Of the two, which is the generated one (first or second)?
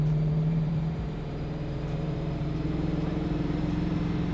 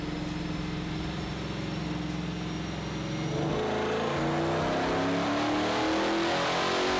first